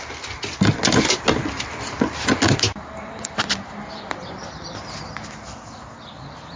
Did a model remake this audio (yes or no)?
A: no